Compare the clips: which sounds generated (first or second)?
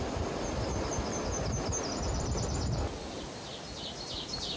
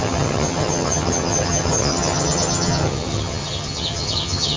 second